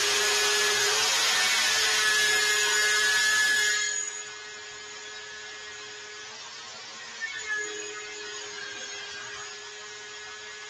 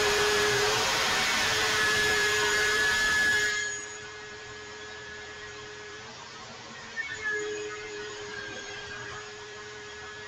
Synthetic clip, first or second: second